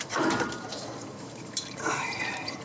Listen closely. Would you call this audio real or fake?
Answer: fake